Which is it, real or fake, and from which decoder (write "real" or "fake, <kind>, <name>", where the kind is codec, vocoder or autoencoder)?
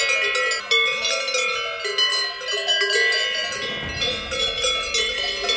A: real